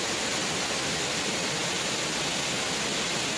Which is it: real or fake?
real